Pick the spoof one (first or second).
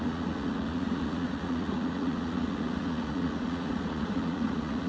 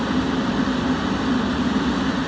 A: first